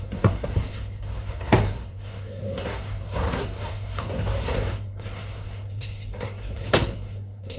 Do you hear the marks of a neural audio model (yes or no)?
yes